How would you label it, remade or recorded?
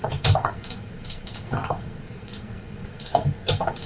remade